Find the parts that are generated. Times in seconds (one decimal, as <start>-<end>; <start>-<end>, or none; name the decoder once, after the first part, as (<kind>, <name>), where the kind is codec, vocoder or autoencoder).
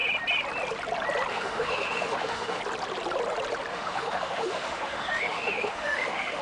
1.3-2.6 (autoencoder, DAC-VAE); 3.7-6.4